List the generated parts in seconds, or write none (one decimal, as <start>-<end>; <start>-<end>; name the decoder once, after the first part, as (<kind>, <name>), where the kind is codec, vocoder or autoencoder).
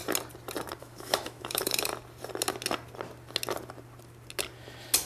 0.8-1.9 (autoencoder, DAC-VAE)